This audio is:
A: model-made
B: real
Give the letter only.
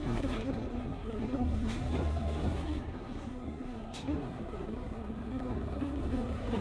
A